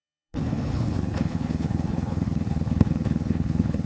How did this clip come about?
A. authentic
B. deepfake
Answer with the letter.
B